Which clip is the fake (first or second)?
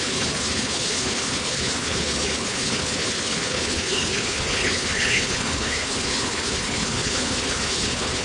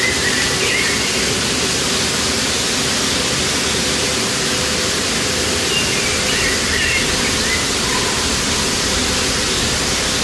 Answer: first